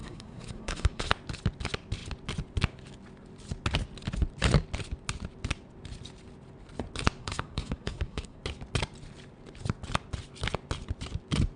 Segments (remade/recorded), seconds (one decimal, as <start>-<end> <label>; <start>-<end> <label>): 0.0-1.1 remade; 1.1-7.2 recorded; 7.2-8.4 remade; 8.4-11.6 recorded